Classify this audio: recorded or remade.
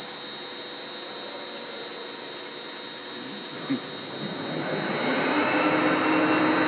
recorded